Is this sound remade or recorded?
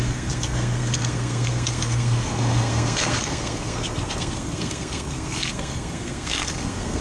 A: remade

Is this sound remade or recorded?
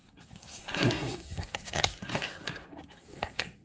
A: remade